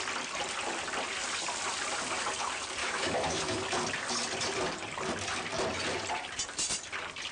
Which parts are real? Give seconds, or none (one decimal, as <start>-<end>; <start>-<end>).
0.0-2.8; 3.6-7.3